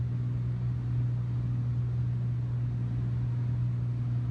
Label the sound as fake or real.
real